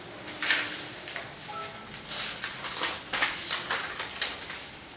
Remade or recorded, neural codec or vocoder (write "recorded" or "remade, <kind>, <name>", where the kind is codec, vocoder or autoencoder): remade, vocoder, BigVGAN v2